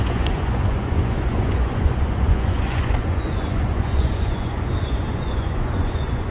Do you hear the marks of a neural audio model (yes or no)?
yes